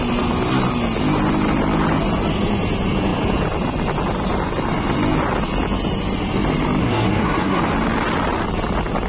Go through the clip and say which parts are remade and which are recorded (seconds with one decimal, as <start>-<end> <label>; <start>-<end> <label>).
0.0-6.8 recorded; 6.8-7.6 remade; 7.6-9.1 recorded